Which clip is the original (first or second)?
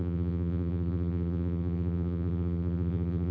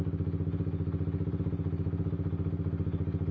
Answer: second